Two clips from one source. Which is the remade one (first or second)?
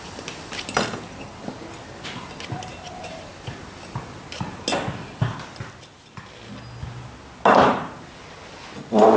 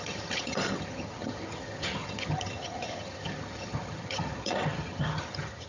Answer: second